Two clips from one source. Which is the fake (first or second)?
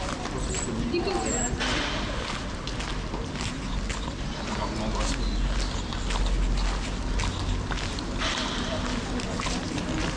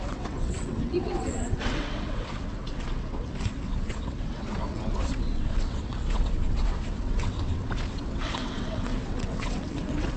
second